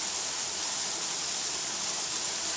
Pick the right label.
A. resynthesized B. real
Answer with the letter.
B